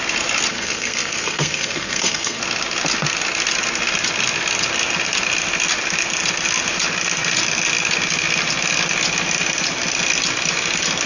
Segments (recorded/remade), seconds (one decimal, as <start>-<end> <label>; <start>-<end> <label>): 0.0-0.5 recorded; 0.5-2.4 remade; 2.4-11.1 recorded